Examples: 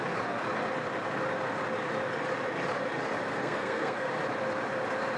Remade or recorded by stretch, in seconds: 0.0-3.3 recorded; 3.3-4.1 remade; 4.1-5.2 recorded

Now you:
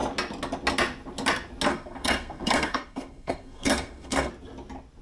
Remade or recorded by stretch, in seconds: 0.0-1.7 recorded; 1.7-4.3 remade; 4.3-5.0 recorded

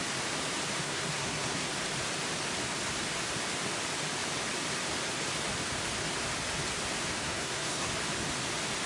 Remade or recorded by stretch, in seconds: 0.0-0.8 recorded; 0.8-1.7 remade; 1.7-7.2 recorded; 7.2-7.9 remade; 7.9-8.9 recorded

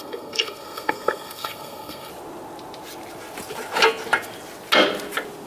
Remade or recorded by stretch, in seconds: 0.0-2.1 remade; 2.1-5.5 recorded

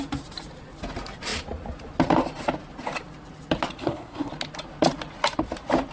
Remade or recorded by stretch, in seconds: 0.0-3.8 recorded; 3.8-4.3 remade; 4.3-5.9 recorded

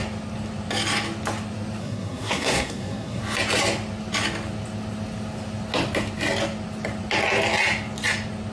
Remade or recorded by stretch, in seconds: 0.0-1.8 recorded; 1.8-3.2 remade; 3.2-8.5 recorded